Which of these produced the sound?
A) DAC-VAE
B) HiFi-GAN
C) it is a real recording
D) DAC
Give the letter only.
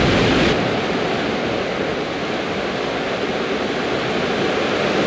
C